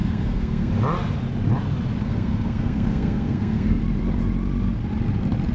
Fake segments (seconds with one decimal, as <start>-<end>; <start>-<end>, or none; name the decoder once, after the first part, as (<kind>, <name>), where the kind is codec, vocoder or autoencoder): 0.0-0.7 (codec, SNAC); 2.0-3.8

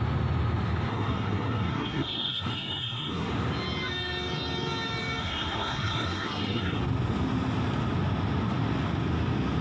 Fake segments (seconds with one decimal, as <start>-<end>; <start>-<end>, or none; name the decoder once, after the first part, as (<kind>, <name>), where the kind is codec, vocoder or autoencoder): 0.9-3.3 (codec, SNAC); 5.2-6.8

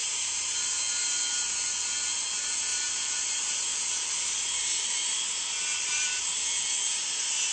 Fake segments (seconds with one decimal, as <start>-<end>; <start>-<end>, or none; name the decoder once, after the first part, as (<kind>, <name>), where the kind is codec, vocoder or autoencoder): 0.0-0.7 (vocoder, BigVGAN v2); 2.7-5.1; 5.7-6.3

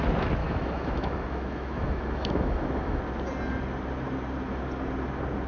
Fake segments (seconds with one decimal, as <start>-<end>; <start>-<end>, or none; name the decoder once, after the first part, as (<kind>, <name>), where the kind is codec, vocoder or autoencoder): 0.4-3.0 (autoencoder, DAC-VAE)

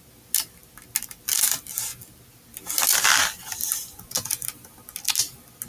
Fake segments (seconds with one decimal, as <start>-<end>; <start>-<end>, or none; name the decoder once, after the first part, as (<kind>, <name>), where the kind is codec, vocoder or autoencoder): none

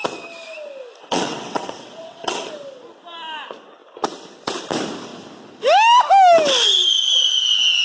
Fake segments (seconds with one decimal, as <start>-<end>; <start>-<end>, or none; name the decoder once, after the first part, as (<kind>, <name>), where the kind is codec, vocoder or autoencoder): 1.0-2.5 (vocoder, WaveNeXt)

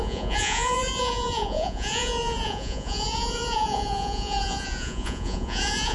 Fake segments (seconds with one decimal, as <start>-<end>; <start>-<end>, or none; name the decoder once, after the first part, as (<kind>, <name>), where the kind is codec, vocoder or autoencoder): 0.0-5.9 (vocoder, Vocos)